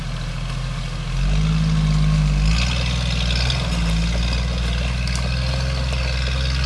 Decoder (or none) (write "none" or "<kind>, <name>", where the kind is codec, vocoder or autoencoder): none